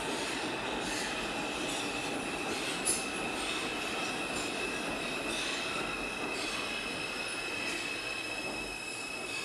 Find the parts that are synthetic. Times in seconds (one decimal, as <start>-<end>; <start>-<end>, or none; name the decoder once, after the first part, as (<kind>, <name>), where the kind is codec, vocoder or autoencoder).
none